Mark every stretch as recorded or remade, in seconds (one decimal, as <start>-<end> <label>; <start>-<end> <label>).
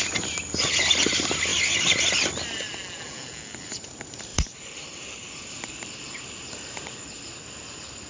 0.0-4.3 recorded; 4.3-7.3 remade; 7.3-8.1 recorded